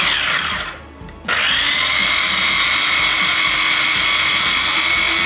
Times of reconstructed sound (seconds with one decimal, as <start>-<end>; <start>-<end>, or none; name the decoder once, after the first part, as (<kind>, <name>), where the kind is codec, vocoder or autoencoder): none